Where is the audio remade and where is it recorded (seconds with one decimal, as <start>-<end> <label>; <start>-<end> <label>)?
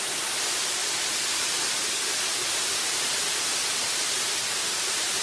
0.0-5.2 remade